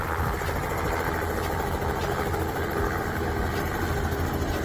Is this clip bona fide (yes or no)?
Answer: yes